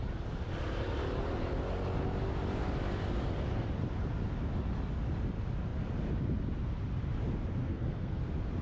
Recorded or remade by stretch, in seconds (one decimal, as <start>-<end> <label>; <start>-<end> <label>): 0.0-7.6 recorded; 7.6-8.2 remade; 8.2-8.6 recorded